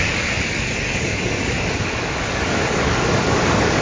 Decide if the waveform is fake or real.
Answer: fake